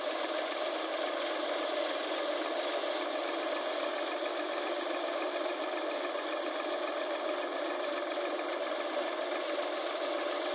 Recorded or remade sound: recorded